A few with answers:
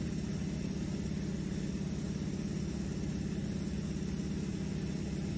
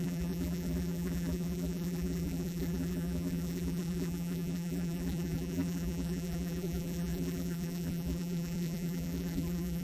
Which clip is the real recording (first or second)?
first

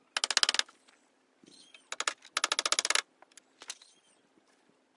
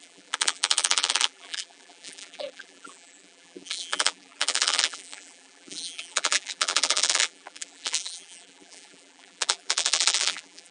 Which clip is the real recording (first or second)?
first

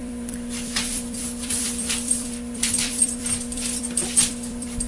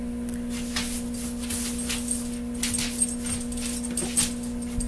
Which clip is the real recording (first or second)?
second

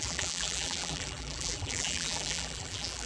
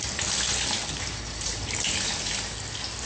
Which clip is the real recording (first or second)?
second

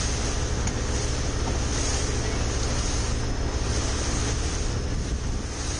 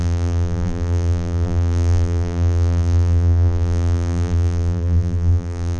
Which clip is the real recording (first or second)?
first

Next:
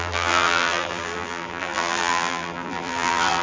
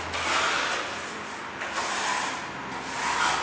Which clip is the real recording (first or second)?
second